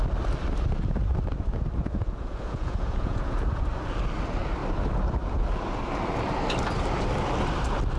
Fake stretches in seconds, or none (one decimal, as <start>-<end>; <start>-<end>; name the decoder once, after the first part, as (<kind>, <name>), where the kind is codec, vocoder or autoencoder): 1.8-3.6 (vocoder, Vocos)